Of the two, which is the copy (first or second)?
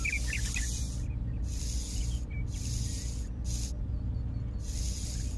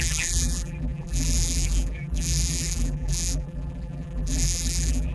second